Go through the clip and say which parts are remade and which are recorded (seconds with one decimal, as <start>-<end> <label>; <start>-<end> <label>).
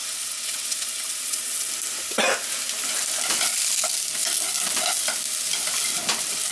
0.0-1.7 remade; 1.7-6.5 recorded